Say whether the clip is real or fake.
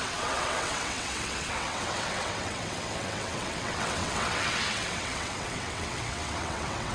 fake